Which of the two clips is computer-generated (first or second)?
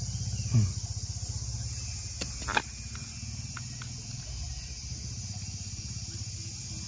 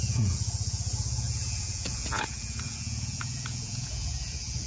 second